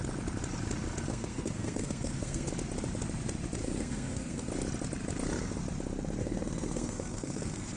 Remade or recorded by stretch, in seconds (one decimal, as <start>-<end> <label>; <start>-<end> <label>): 0.0-1.1 recorded; 1.1-2.5 remade; 2.5-3.6 recorded; 3.6-4.5 remade; 4.5-6.2 recorded; 6.2-7.8 remade

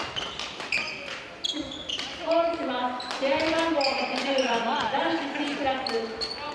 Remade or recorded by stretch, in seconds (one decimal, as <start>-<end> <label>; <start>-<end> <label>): 0.0-4.4 recorded; 4.4-5.0 remade; 5.0-6.5 recorded